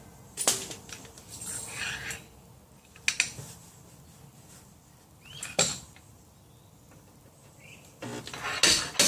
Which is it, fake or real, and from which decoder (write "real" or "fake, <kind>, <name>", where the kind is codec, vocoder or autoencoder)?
real